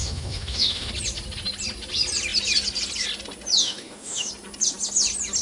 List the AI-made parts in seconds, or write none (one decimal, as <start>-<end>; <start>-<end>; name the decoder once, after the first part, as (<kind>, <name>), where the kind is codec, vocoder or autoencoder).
0.0-0.9 (autoencoder, DAC-VAE); 3.6-4.3